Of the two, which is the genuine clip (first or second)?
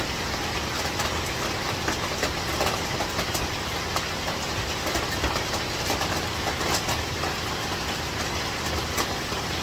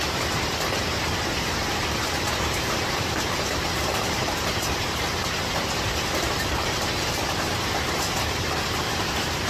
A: first